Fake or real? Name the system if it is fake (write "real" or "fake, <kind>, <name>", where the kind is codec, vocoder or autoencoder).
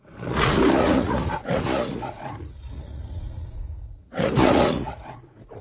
fake, vocoder, Vocos